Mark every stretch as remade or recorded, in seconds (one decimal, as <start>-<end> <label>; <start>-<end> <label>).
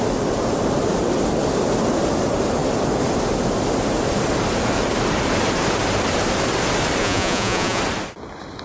0.0-7.0 recorded; 7.0-7.8 remade; 7.8-8.6 recorded